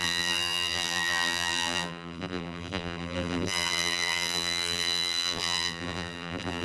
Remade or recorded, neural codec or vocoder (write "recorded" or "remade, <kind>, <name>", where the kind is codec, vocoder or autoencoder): remade, vocoder, BigVGAN v2